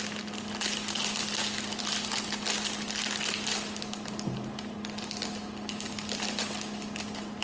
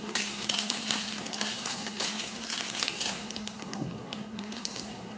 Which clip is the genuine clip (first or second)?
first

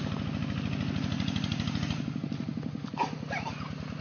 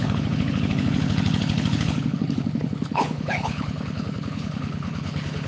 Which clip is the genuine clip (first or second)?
first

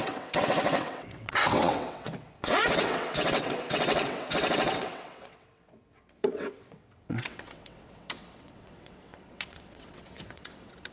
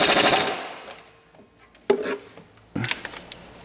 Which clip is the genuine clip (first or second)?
second